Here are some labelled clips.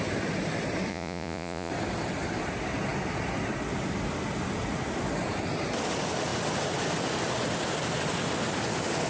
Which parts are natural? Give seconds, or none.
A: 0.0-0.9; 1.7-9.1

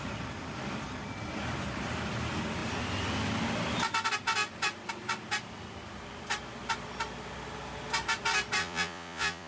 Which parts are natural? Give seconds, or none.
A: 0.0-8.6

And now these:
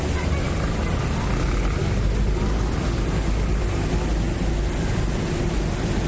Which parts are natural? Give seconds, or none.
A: 0.0-6.1